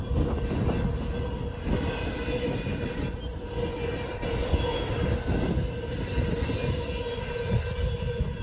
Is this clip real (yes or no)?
yes